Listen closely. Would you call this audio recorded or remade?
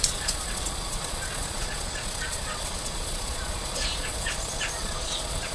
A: remade